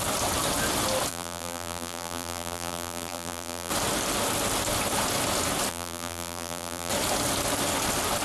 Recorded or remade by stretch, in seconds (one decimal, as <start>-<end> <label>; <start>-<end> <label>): 0.0-1.1 recorded; 1.1-3.7 remade; 3.7-5.7 recorded; 5.7-6.9 remade; 6.9-8.2 recorded